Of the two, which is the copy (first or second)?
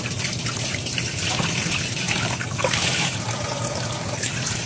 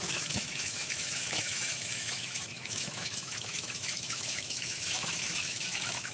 second